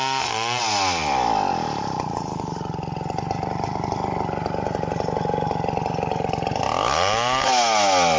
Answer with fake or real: real